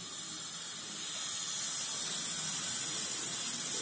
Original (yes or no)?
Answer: yes